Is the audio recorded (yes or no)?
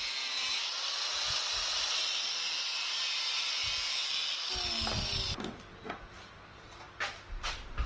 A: yes